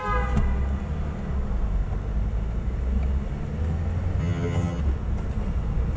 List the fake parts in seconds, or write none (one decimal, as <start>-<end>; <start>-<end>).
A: 4.2-4.8